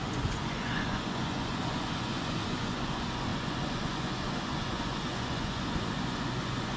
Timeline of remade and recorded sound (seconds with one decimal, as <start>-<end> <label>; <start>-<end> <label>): 0.0-6.8 remade